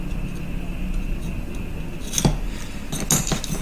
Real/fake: real